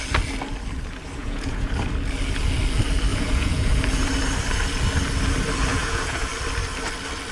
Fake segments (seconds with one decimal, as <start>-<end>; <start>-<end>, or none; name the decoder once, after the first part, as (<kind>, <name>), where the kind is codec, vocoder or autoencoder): 1.2-1.7 (vocoder, Vocos); 3.1-4.0; 5.7-6.3